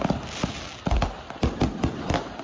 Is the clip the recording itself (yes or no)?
yes